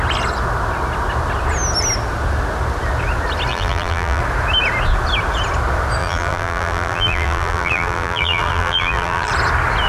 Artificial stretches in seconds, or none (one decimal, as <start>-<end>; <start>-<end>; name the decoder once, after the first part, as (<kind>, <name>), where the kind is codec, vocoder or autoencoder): 3.5-4.2 (vocoder, BigVGAN v2); 6.0-9.3